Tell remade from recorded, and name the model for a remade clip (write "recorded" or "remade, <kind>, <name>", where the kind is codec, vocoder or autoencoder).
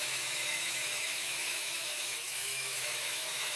remade, autoencoder, DAC-VAE